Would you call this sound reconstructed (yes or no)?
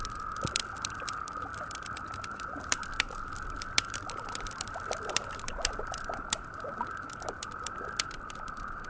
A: yes